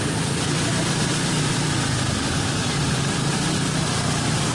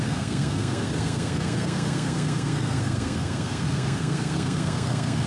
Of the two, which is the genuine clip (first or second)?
first